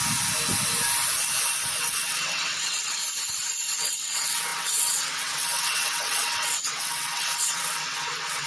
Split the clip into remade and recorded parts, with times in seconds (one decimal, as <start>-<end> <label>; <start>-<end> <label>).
0.0-1.8 recorded; 1.8-3.0 remade; 3.0-3.8 recorded; 3.8-8.5 remade